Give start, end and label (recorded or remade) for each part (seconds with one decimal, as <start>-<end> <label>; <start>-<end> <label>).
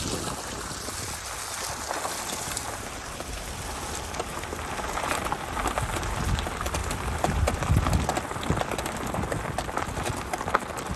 0.0-11.0 recorded